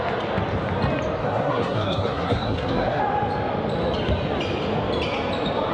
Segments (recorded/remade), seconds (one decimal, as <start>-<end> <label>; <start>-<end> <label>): 0.0-1.2 recorded; 1.2-3.0 remade; 3.0-5.7 recorded